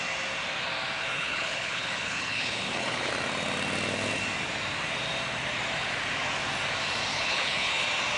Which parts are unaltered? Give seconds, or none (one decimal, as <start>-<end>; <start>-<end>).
0.0-1.1; 3.1-7.1; 7.7-8.2